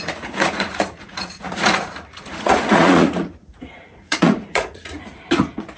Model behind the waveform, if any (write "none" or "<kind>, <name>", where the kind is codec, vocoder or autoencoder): vocoder, Vocos